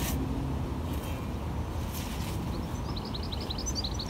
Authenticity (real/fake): real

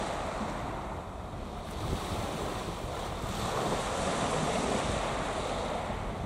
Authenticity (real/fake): real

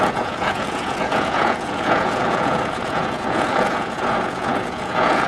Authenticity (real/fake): fake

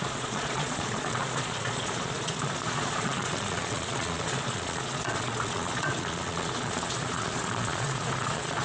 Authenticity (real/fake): fake